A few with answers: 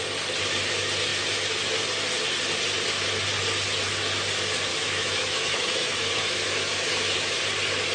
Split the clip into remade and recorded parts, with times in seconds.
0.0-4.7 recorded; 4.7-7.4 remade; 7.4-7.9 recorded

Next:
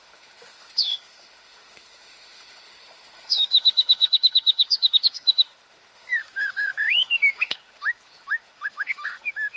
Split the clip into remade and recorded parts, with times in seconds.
0.0-9.6 remade

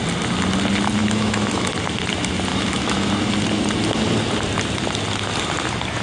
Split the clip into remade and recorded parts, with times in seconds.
0.0-1.0 recorded; 1.0-1.7 remade; 1.7-2.5 recorded; 2.5-3.1 remade; 3.1-6.0 recorded

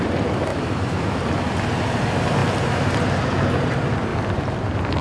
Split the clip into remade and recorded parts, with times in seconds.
0.0-0.5 recorded; 0.5-1.2 remade; 1.2-5.0 recorded